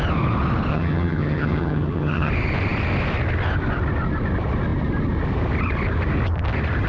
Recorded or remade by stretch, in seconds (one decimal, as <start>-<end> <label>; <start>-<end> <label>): 0.0-0.7 recorded; 0.7-2.3 remade; 2.3-6.9 recorded